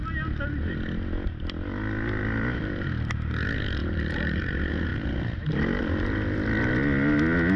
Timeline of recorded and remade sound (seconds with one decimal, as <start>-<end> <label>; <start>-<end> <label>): 0.0-3.8 recorded; 3.8-4.4 remade; 4.4-7.6 recorded